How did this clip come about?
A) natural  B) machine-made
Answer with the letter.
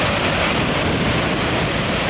A